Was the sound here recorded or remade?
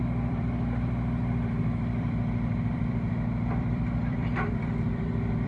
remade